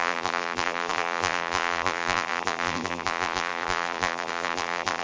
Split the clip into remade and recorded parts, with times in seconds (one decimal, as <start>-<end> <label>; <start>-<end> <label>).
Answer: 0.0-5.0 remade